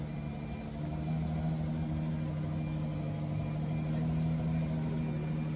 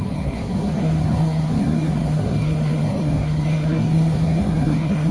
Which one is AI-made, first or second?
second